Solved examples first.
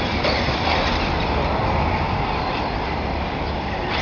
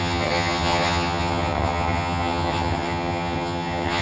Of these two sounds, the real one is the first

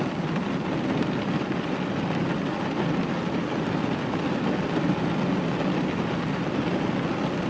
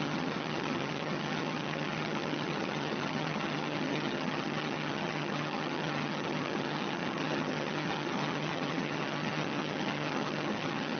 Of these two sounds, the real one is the first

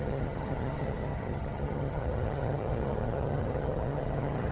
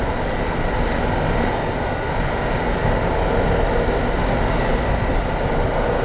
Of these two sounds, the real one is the second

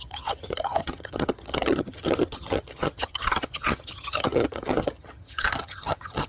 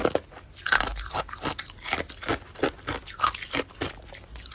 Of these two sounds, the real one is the second